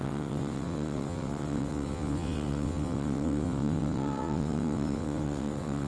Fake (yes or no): yes